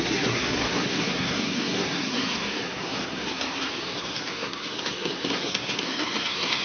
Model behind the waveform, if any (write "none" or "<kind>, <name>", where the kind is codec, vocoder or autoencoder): codec, SNAC